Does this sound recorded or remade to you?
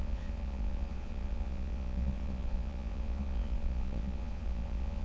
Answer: remade